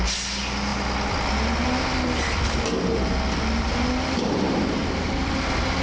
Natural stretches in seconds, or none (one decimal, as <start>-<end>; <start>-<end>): 0.0-5.8